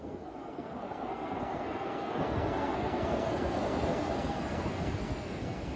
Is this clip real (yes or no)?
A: no